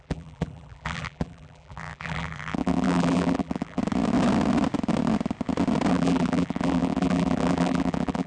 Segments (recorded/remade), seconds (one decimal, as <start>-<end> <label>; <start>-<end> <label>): 0.0-3.8 remade; 3.8-5.9 recorded; 5.9-8.3 remade